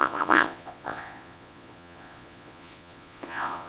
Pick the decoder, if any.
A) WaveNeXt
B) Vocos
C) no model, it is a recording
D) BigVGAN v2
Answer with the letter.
B